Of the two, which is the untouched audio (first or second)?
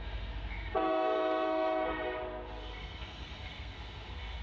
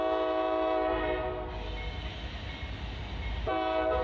second